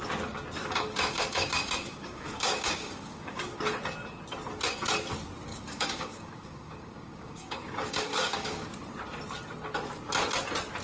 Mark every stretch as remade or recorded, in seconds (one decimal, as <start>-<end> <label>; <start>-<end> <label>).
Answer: 0.0-0.6 recorded; 0.6-3.6 remade; 3.6-5.5 recorded; 5.5-8.7 remade; 8.7-10.8 recorded